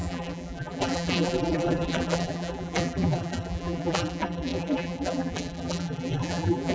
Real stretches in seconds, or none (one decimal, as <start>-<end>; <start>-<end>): none